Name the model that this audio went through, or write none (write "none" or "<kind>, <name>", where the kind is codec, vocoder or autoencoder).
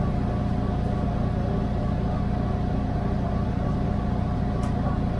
none